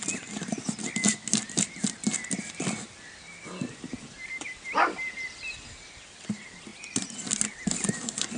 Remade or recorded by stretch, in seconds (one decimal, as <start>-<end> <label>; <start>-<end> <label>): 0.0-8.4 recorded